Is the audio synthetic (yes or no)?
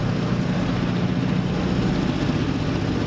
no